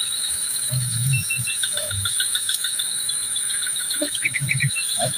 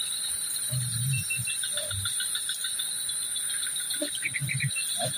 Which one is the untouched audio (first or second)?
second